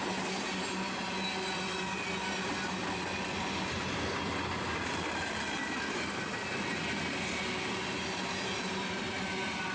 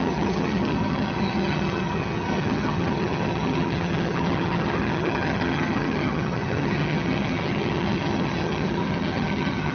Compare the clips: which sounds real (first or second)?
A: first